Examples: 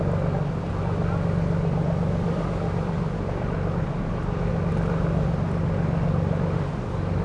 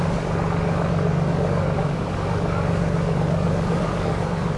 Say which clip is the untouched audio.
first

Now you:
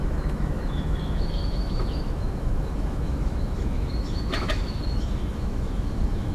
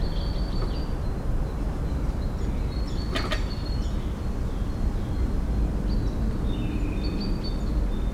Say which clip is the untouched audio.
second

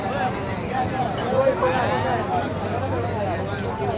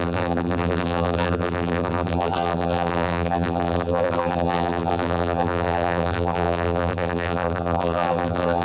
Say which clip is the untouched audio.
first